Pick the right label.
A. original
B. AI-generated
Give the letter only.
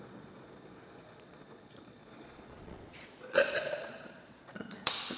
B